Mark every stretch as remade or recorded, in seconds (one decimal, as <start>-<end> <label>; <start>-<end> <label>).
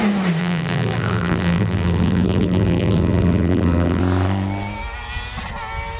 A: 0.0-0.4 recorded; 0.4-4.0 remade; 4.0-6.0 recorded